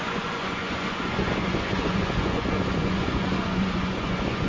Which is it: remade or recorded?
remade